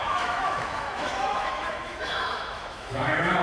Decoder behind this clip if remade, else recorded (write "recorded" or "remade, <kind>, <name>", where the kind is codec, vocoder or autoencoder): remade, autoencoder, DAC-VAE